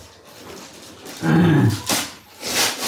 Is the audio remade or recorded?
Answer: recorded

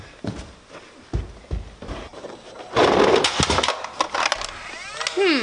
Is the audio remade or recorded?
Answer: recorded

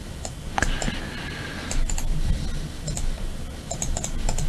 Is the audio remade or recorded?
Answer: recorded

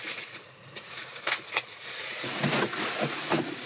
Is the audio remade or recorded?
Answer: remade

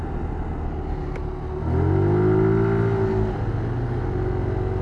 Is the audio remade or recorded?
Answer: recorded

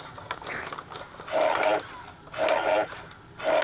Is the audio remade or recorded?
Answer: recorded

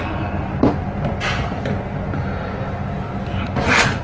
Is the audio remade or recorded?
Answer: recorded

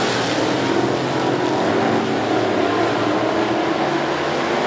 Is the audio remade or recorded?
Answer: recorded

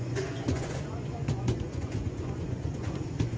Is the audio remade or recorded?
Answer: remade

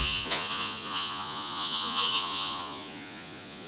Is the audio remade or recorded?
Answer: remade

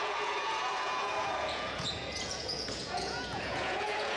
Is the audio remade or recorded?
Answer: remade